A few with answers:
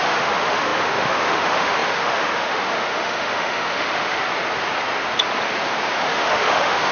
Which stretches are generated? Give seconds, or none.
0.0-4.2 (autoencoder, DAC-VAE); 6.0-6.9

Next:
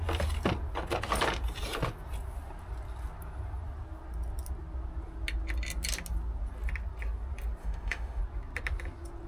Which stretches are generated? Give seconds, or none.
7.6-8.2 (autoencoder, DAC-VAE)

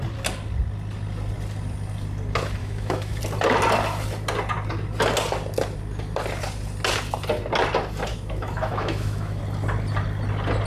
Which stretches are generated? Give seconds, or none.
2.6-3.2 (autoencoder, DAC-VAE); 8.1-9.4

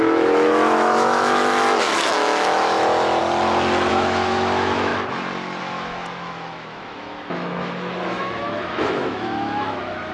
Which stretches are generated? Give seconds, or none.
0.0-3.2 (autoencoder, DAC-VAE); 3.9-4.9; 5.6-10.1

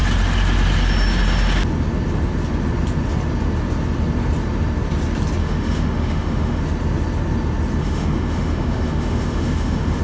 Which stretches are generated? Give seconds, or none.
5.4-6.6 (autoencoder, DAC-VAE); 7.8-10.0

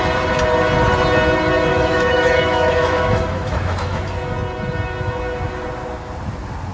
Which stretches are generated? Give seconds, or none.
1.7-4.0 (autoencoder, DAC-VAE)